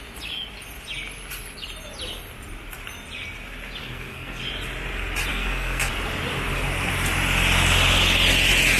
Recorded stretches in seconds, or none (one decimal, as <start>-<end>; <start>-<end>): 0.0-3.8; 4.4-5.3; 5.9-8.8